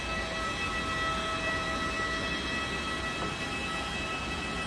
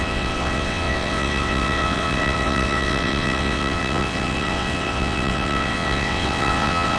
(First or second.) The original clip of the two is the first